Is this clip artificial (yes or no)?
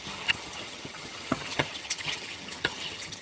yes